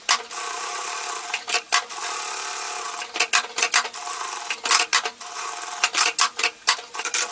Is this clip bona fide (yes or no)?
yes